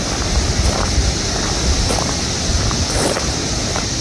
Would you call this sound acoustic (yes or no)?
yes